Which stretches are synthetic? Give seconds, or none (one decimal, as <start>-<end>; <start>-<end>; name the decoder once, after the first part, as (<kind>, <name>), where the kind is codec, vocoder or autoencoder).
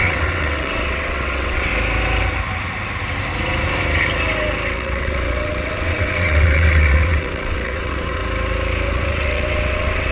0.0-1.7 (vocoder, WaveNeXt); 4.7-8.2; 8.9-10.1